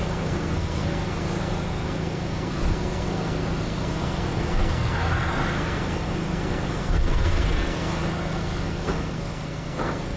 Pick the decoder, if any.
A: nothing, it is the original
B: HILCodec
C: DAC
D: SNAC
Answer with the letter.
D